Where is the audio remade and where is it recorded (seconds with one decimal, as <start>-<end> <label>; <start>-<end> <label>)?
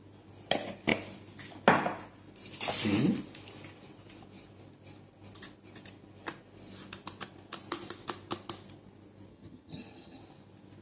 0.0-9.3 recorded; 9.3-10.2 remade; 10.2-10.8 recorded